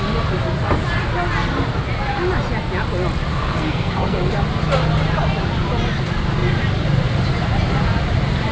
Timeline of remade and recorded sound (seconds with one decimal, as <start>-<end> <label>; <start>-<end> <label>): 0.0-3.3 recorded; 3.3-4.3 remade; 4.3-8.5 recorded